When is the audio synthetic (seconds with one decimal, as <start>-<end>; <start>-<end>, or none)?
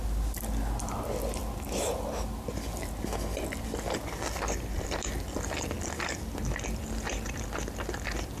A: none